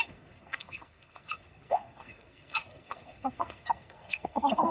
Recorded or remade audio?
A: remade